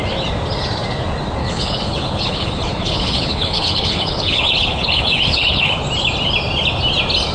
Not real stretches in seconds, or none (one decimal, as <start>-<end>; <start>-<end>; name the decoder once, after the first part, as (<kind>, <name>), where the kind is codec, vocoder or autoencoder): 1.4-5.8 (codec, HILCodec)